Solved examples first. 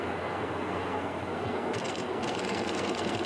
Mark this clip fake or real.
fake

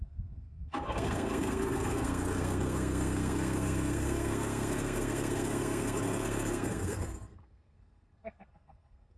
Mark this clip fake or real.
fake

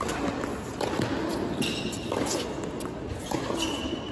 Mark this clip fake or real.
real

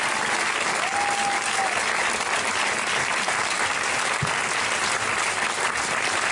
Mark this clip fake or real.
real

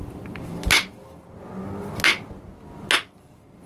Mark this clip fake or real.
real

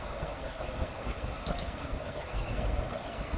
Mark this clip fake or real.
fake